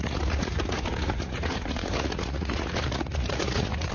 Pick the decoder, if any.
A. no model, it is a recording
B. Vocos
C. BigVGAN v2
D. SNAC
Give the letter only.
B